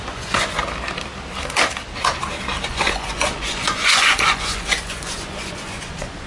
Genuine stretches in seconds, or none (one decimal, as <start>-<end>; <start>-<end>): 0.6-2.7